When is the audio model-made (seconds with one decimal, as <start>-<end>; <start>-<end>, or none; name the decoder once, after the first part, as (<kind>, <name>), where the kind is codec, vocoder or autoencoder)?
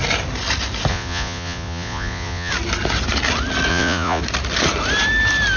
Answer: 0.9-2.5 (vocoder, Vocos); 3.7-4.2